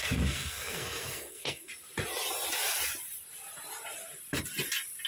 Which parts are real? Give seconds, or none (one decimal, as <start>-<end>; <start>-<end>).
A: 1.7-5.1